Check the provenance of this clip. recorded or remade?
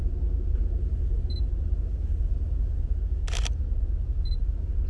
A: recorded